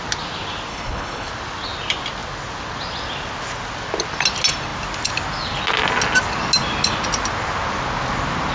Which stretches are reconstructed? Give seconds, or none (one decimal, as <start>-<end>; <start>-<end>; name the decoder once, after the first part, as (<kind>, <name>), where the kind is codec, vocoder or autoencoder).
0.7-1.3 (codec, HILCodec)